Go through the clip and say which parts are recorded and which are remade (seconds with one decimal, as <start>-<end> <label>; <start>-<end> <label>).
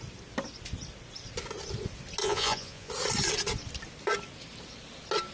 0.0-2.2 recorded; 2.2-2.9 remade; 2.9-5.3 recorded